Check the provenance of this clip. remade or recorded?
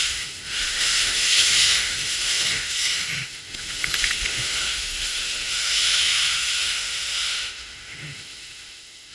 remade